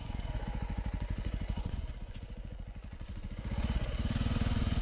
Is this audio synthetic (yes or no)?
yes